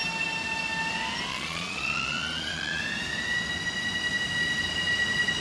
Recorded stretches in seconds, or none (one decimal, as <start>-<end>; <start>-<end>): 0.0-1.3; 2.8-5.4